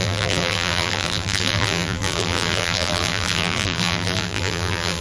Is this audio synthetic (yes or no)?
yes